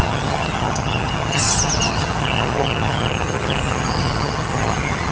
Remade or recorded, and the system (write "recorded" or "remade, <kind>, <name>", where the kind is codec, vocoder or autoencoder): remade, vocoder, HiFi-GAN